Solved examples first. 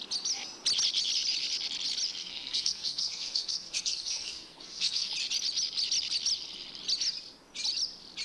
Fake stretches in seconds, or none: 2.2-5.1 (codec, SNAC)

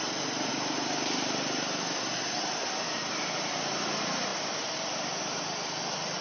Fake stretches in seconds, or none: none

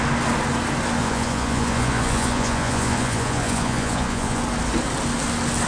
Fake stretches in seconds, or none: 1.0-4.4 (vocoder, Vocos)

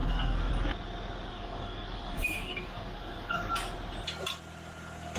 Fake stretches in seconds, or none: 0.0-0.5 (codec, DAC); 1.3-3.5

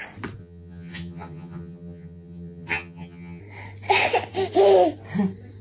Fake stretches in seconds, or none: 0.4-3.4 (vocoder, HiFi-GAN)

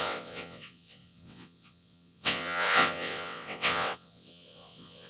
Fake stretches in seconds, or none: 0.0-5.1 (vocoder, WaveNeXt)

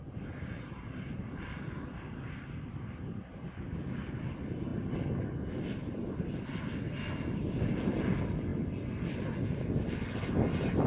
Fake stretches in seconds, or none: none